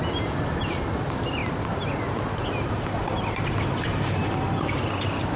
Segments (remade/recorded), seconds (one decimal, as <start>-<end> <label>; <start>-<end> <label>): 0.0-0.6 recorded; 0.6-1.4 remade; 1.4-3.3 recorded; 3.3-4.2 remade; 4.2-5.0 recorded; 5.0-5.4 remade

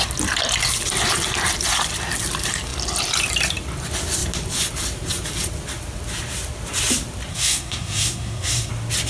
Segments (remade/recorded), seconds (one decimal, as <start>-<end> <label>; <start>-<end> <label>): 0.0-7.3 recorded; 7.3-8.7 remade; 8.7-9.1 recorded

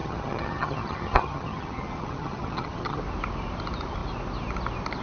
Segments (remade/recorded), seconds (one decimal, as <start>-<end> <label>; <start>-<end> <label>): 0.0-3.0 remade; 3.0-5.0 recorded

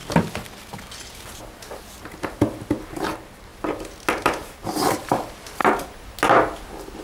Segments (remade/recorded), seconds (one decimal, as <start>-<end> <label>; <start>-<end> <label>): 0.0-2.8 recorded; 2.8-3.5 remade; 3.5-4.1 recorded; 4.1-5.6 remade; 5.6-7.0 recorded